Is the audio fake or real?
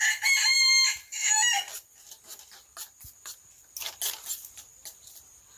real